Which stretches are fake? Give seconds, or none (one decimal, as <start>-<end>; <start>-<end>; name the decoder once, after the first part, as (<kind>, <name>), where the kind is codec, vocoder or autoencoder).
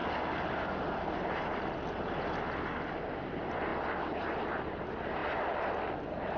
none